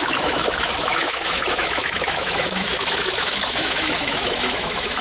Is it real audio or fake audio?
fake